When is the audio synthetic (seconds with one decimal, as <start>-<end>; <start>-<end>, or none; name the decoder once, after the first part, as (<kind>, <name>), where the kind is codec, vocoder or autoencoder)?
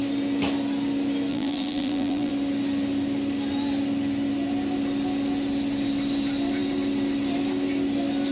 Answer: 1.3-2.3 (vocoder, BigVGAN v2)